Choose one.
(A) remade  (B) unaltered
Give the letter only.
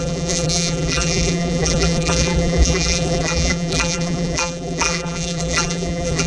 A